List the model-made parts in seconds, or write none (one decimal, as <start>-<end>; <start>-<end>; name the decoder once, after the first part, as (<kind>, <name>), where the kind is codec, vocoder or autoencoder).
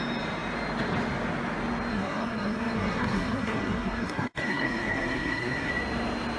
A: 1.9-5.7 (codec, SNAC)